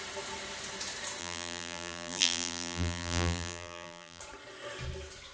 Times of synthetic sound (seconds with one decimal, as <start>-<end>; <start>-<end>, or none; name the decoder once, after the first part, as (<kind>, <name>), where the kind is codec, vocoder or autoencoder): 1.2-4.2 (vocoder, BigVGAN v2)